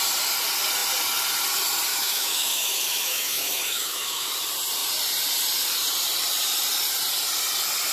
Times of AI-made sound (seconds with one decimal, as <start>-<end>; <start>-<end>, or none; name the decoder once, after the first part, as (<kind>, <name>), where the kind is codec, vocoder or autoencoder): 1.9-4.3 (autoencoder, DAC-VAE)